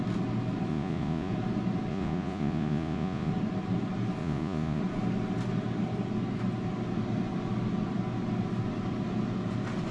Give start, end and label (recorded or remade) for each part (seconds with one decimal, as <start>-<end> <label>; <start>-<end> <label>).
0.0-0.7 recorded; 0.7-1.3 remade; 1.3-1.9 recorded; 1.9-3.3 remade; 3.3-4.2 recorded; 4.2-4.8 remade; 4.8-9.9 recorded